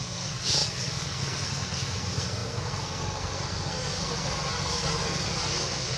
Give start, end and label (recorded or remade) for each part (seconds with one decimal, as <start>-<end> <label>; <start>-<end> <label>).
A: 0.0-6.0 remade